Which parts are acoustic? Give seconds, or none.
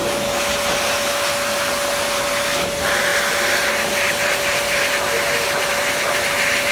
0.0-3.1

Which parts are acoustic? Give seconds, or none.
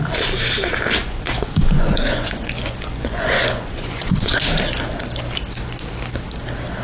0.0-1.0; 4.4-6.8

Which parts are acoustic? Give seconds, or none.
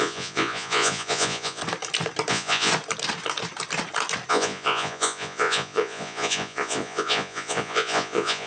1.6-2.3; 2.7-4.3